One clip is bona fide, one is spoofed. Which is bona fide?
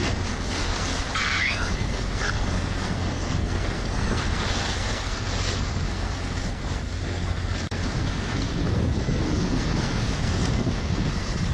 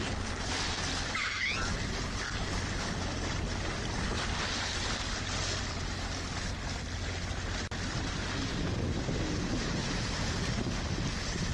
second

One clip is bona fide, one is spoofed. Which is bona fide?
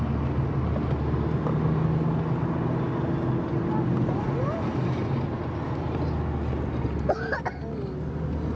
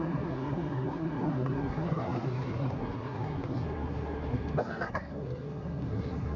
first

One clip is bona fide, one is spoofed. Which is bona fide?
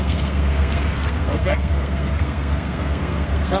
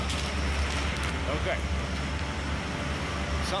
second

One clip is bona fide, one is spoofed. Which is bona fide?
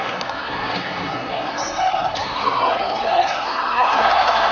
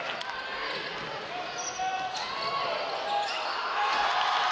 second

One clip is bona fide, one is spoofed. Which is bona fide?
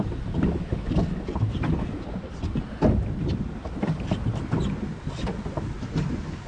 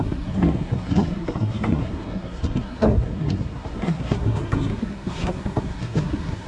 first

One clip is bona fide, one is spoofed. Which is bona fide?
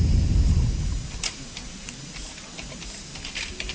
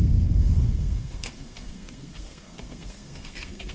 first